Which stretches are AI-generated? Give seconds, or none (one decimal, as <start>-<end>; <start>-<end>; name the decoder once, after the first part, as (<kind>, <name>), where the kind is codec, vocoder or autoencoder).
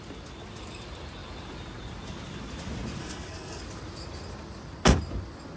3.0-3.6 (codec, SNAC)